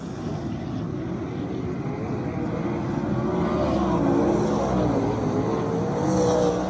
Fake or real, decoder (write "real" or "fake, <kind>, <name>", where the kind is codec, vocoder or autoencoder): real